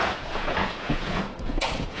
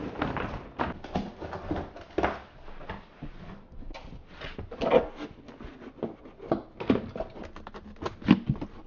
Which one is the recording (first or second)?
second